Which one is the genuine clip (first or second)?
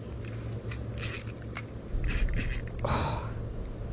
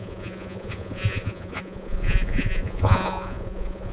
first